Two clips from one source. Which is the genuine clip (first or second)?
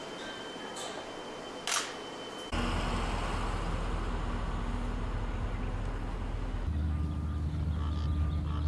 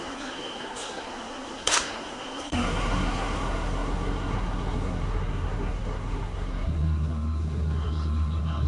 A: first